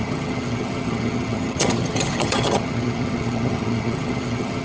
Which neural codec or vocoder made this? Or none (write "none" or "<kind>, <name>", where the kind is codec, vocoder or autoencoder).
vocoder, HiFi-GAN